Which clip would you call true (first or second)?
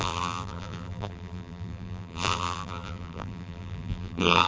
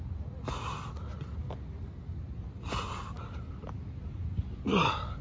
second